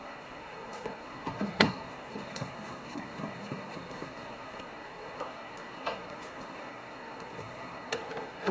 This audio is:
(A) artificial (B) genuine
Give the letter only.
A